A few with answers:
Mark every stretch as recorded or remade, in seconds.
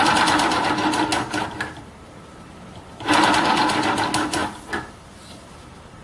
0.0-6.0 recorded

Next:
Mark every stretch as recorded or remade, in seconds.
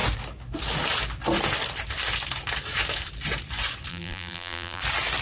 0.0-3.9 recorded; 3.9-4.8 remade; 4.8-5.2 recorded